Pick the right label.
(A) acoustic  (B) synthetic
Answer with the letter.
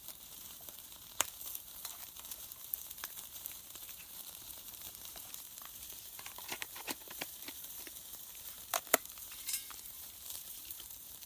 B